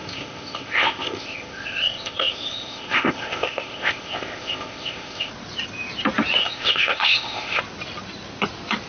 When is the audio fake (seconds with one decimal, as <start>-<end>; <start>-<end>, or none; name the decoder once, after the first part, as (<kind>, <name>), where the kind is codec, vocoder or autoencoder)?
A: 0.0-5.3 (codec, ZipCodec); 6.4-7.6